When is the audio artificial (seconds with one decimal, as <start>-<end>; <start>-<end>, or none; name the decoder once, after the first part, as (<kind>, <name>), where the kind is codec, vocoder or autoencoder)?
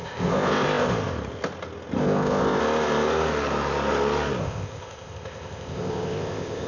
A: 0.0-0.9 (codec, ZipCodec); 2.0-2.6; 4.4-6.7